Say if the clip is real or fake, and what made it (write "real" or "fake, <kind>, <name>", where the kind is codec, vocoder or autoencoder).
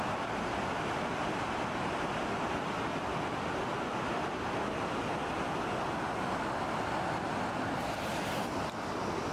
real